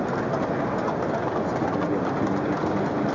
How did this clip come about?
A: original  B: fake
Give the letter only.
A